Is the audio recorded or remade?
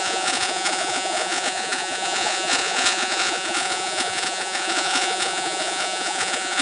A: remade